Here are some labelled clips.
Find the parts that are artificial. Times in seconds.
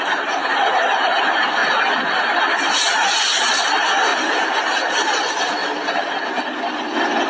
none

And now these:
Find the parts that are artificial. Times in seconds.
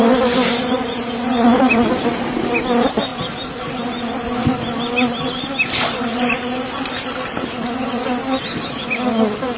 none